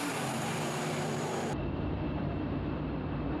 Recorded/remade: remade